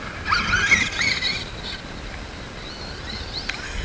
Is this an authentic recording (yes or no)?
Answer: yes